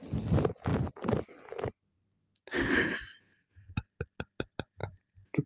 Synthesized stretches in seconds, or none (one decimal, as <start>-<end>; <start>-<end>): 4.8-5.5